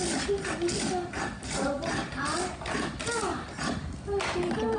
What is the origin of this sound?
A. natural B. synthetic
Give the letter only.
A